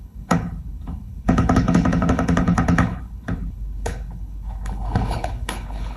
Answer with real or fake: fake